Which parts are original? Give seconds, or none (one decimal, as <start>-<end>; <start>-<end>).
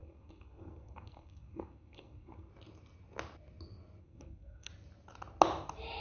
2.5-4.0; 4.7-6.0